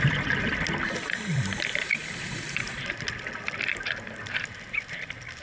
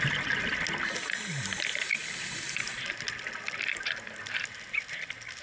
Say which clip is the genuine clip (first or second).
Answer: second